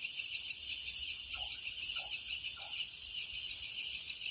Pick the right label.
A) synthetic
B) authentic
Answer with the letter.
B